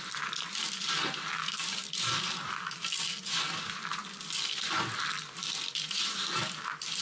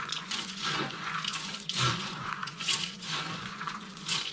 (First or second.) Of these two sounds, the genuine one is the first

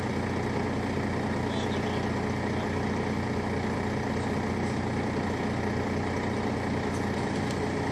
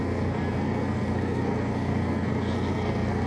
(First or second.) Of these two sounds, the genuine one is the first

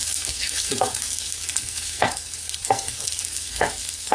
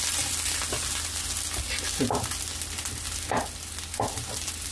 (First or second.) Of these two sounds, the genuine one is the second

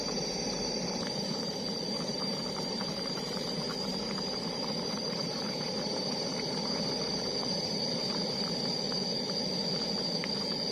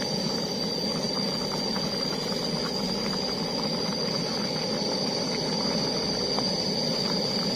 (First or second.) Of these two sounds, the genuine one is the second